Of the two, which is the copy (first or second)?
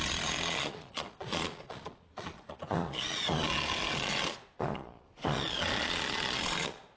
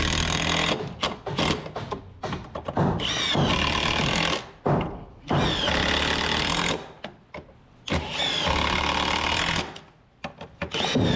first